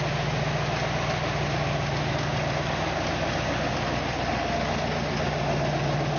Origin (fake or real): real